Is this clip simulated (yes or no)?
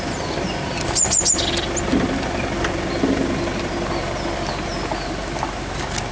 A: no